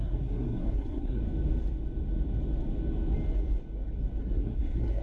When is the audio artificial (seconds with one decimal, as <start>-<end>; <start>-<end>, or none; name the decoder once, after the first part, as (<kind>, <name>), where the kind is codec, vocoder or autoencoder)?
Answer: 0.0-1.2 (codec, SNAC); 4.2-5.0